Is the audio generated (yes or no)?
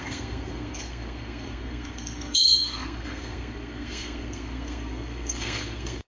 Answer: yes